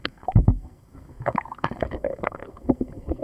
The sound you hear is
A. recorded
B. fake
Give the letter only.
B